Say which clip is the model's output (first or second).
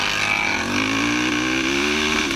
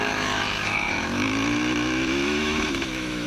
second